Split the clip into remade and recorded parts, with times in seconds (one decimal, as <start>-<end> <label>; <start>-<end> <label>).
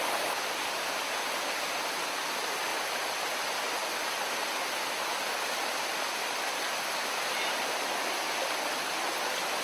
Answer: 0.0-9.6 recorded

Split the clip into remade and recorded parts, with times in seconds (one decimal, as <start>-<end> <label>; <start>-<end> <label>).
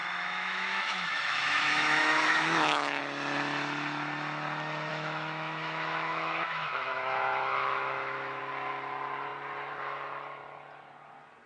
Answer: 0.0-3.0 remade; 3.0-4.9 recorded; 4.9-8.4 remade; 8.4-11.5 recorded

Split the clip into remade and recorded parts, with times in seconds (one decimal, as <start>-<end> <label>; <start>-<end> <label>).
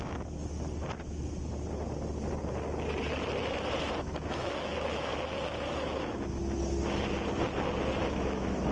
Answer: 0.0-0.4 remade; 0.4-4.0 recorded; 4.0-5.1 remade; 5.1-5.7 recorded; 5.7-6.4 remade; 6.4-8.0 recorded; 8.0-8.7 remade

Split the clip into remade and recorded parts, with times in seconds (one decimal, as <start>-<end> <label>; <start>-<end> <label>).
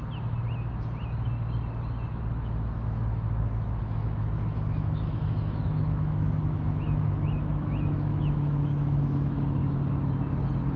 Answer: 0.0-2.1 recorded; 2.1-9.6 remade; 9.6-10.8 recorded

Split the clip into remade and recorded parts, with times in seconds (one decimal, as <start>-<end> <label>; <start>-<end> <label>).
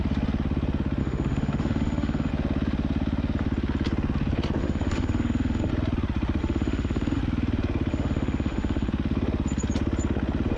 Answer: 0.0-1.0 recorded; 1.0-2.3 remade; 2.3-4.6 recorded; 4.6-5.7 remade; 5.7-6.4 recorded; 6.4-7.2 remade; 7.2-7.9 recorded; 7.9-8.9 remade; 8.9-10.6 recorded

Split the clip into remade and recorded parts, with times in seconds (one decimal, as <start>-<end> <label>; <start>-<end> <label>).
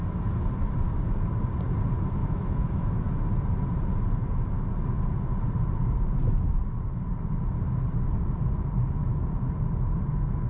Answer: 0.0-2.2 recorded; 2.2-3.0 remade; 3.0-10.5 recorded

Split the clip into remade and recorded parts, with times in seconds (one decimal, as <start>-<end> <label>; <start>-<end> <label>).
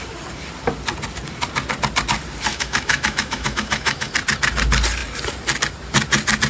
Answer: 0.0-2.5 recorded; 2.5-4.1 remade; 4.1-6.5 recorded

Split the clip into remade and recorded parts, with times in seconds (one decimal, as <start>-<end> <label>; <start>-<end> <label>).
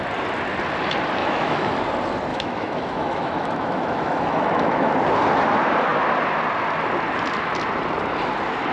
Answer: 0.0-1.2 recorded; 1.2-1.8 remade; 1.8-2.3 recorded; 2.3-4.9 remade; 4.9-8.7 recorded